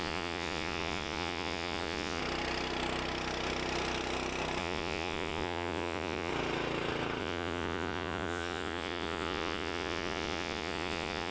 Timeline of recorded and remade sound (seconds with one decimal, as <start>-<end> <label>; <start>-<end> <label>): 0.0-2.2 remade; 2.2-4.6 recorded; 4.6-6.3 remade; 6.3-7.2 recorded; 7.2-11.3 remade